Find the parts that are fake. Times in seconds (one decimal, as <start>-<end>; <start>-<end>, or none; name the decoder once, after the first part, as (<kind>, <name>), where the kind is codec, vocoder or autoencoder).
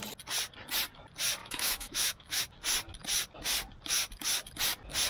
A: 1.4-2.4 (autoencoder, DAC-VAE)